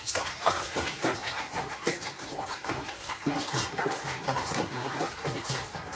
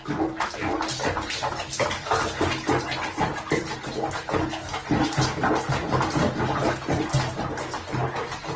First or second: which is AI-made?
first